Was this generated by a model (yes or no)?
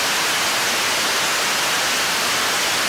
no